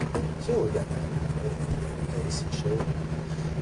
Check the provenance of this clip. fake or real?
real